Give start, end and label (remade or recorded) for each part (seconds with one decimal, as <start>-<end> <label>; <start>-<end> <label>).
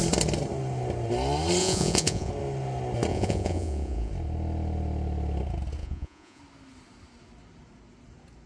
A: 0.0-1.6 recorded; 1.6-2.3 remade; 2.3-3.1 recorded; 3.1-4.1 remade; 4.1-5.8 recorded; 5.8-6.4 remade; 6.4-8.5 recorded